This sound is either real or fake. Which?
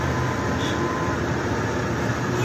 real